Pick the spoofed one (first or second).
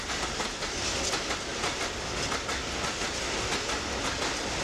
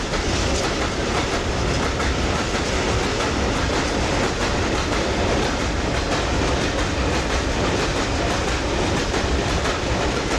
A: second